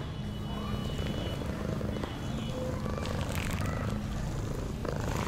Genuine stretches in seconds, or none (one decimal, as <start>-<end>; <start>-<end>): 0.0-0.8; 1.8-3.0; 4.0-4.8